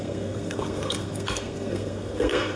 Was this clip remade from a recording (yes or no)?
yes